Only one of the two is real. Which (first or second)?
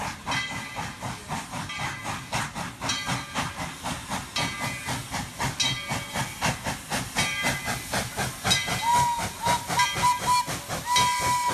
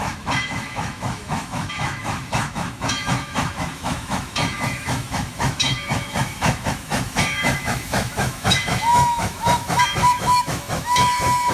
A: first